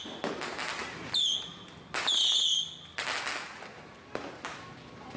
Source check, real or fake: real